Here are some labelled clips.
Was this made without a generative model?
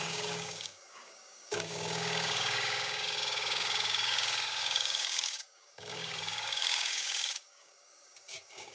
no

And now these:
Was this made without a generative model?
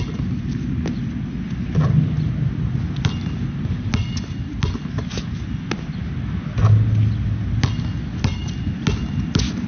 yes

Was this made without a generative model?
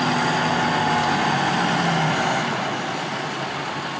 yes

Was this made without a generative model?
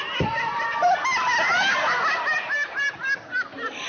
yes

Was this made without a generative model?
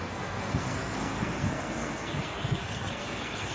no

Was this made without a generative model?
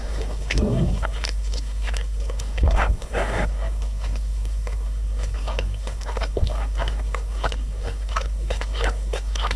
no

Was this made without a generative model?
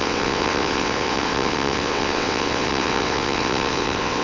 no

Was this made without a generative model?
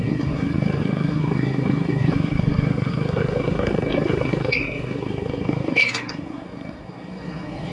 no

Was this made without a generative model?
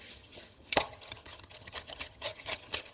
no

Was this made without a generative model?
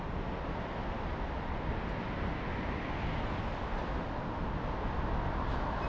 yes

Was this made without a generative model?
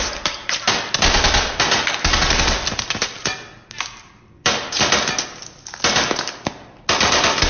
yes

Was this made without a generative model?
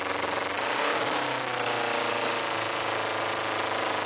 yes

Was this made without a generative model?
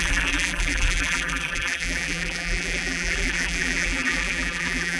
no